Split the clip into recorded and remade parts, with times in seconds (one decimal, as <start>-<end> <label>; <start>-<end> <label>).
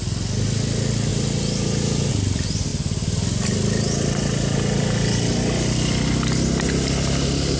0.0-7.6 recorded